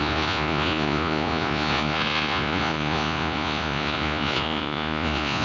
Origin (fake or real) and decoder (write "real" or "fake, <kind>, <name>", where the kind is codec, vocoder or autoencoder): fake, vocoder, Vocos